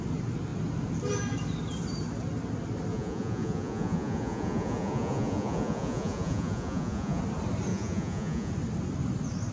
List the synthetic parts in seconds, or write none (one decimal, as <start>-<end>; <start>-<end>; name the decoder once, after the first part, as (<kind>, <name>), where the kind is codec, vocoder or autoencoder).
2.9-7.2 (vocoder, Vocos); 7.7-8.5